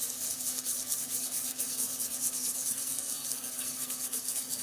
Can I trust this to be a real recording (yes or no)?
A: no